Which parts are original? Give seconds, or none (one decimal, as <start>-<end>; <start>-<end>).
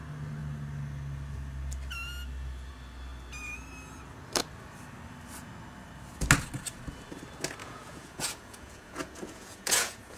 0.0-7.6